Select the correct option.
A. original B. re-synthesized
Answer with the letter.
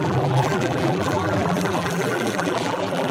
B